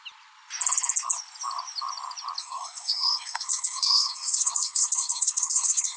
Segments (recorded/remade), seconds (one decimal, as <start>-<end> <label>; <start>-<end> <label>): 0.0-2.4 recorded; 2.4-6.0 remade